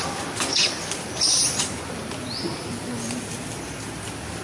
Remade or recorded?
recorded